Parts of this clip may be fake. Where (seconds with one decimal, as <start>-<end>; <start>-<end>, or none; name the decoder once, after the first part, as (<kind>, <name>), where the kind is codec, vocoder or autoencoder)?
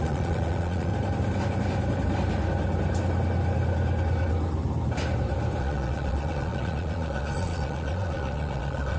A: 0.0-0.9 (vocoder, Vocos); 5.6-9.0